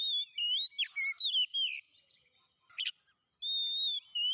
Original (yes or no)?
yes